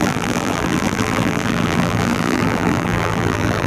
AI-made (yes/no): yes